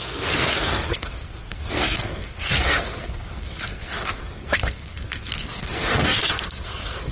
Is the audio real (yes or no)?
no